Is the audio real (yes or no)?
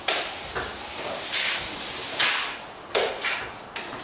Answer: yes